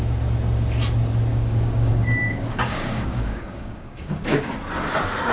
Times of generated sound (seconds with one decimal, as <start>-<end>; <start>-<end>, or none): 1.3-4.5